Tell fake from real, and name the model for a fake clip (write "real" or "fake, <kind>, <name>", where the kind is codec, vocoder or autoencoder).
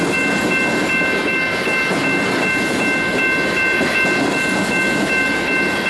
real